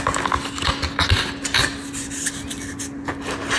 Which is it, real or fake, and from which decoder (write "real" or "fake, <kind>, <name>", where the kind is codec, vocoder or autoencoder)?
real